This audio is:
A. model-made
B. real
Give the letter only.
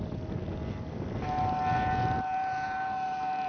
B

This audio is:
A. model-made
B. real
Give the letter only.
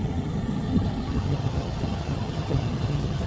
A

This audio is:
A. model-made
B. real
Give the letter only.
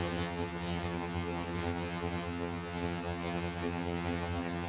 A